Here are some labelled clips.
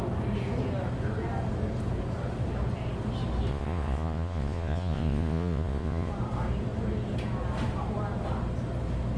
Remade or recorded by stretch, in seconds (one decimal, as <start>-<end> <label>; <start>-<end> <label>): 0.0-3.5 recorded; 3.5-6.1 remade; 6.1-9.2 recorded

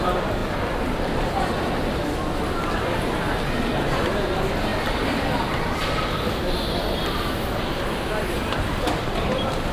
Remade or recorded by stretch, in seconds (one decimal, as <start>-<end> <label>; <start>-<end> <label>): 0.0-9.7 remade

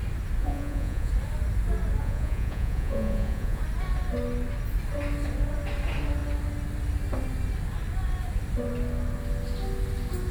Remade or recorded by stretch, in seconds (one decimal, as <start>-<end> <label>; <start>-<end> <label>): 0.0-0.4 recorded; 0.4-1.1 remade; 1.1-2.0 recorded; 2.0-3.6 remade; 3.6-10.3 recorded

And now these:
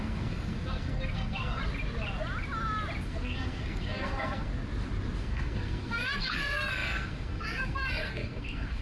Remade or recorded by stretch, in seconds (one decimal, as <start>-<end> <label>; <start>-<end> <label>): 0.0-1.6 remade; 1.6-3.0 recorded; 3.0-4.5 remade; 4.5-5.2 recorded; 5.2-8.8 remade

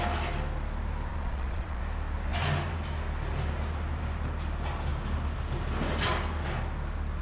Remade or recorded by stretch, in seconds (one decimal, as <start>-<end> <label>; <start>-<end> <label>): 0.0-1.1 recorded; 1.1-1.8 remade; 1.8-7.2 recorded

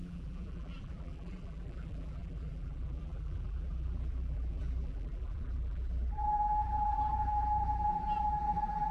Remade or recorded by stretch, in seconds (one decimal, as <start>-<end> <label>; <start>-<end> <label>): 0.0-8.9 remade